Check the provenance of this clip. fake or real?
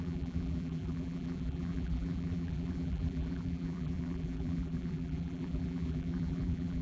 fake